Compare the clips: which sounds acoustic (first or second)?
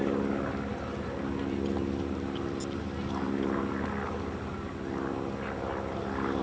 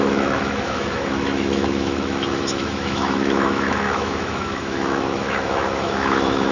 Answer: first